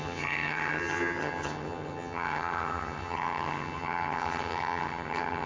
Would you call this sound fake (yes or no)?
yes